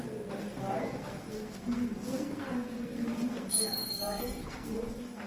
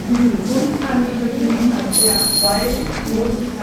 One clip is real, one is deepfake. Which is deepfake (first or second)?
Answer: first